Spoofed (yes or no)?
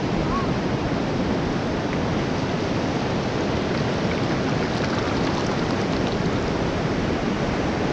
no